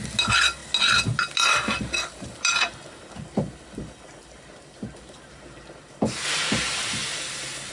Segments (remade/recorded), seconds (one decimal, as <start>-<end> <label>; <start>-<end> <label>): 0.0-7.7 recorded